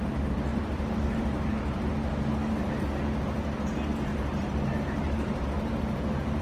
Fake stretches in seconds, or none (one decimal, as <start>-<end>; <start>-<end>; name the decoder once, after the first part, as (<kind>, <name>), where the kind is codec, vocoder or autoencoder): 0.5-1.9 (vocoder, BigVGAN v2); 4.1-5.8